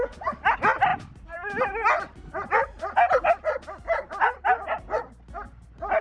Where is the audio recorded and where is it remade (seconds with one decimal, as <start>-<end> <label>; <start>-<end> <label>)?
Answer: 0.0-6.0 recorded